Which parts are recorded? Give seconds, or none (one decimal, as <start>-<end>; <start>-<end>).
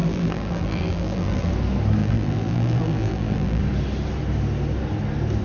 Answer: 1.5-2.0; 3.6-5.4